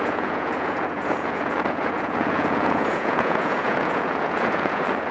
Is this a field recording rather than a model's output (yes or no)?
no